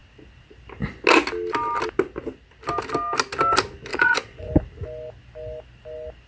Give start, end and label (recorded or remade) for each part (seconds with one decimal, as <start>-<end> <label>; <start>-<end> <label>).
0.0-3.9 recorded; 3.9-4.5 remade; 4.5-6.3 recorded